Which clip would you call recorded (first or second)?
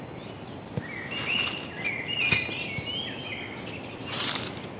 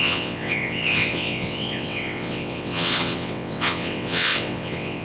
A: first